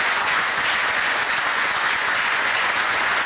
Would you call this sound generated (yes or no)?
yes